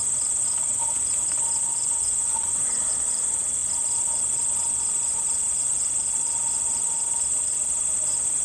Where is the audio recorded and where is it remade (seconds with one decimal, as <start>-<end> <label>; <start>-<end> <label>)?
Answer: 0.0-1.7 recorded; 1.7-2.9 remade; 2.9-8.4 recorded